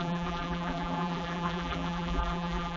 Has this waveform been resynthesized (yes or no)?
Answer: yes